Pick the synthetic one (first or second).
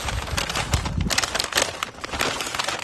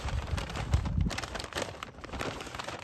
second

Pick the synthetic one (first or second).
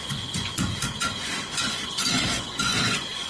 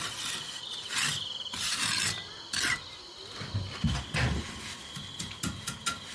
first